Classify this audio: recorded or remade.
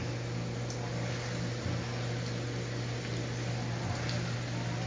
recorded